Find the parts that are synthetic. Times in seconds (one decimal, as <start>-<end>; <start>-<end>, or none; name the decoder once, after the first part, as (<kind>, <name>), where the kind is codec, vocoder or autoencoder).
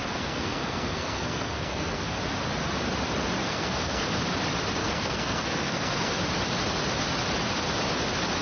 0.0-2.2 (codec, SNAC); 3.4-4.2; 4.8-6.2